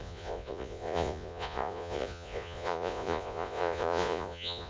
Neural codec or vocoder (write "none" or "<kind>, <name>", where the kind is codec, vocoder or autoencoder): vocoder, Vocos